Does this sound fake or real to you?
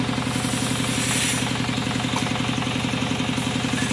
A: real